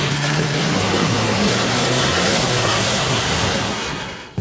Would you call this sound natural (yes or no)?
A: no